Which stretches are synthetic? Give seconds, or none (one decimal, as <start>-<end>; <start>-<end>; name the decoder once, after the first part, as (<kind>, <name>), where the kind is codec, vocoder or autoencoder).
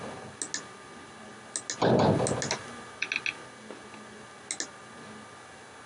none